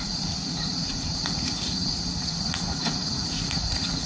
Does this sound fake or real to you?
fake